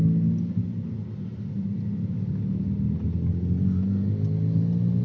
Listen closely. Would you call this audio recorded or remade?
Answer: recorded